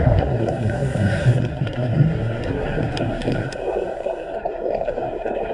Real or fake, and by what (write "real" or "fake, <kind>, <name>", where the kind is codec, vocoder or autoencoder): fake, codec, SNAC